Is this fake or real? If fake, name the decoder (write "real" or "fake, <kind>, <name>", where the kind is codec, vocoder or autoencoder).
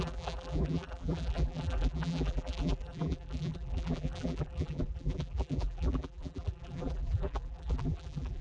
fake, vocoder, BigVGAN v2